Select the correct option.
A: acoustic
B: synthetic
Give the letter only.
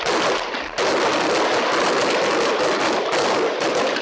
A